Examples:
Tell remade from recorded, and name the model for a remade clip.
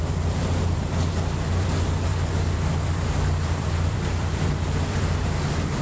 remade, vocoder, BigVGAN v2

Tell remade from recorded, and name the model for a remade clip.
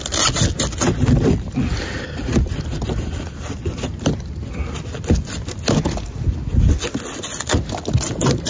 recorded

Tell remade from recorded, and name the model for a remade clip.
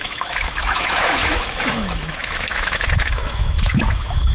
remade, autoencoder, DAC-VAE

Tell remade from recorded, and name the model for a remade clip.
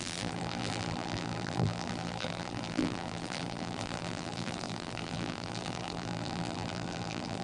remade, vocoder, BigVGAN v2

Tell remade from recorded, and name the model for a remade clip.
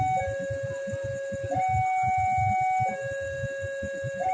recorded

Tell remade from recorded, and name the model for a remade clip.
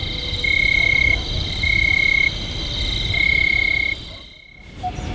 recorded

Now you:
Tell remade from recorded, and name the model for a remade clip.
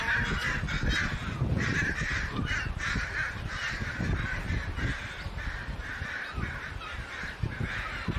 recorded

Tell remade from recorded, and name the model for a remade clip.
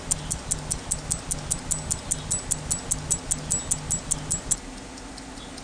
recorded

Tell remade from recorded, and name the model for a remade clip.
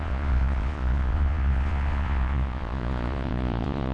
remade, vocoder, Vocos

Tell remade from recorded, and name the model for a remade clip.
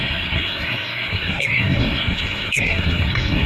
remade, codec, SNAC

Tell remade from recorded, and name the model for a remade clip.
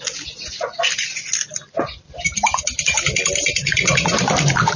recorded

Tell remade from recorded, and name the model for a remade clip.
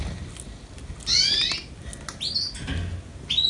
recorded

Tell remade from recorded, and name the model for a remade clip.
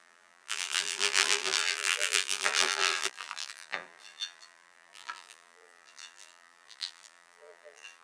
remade, vocoder, BigVGAN v2